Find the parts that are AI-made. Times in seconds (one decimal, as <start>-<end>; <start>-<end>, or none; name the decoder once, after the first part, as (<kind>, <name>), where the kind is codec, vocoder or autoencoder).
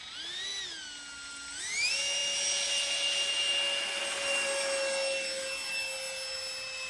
none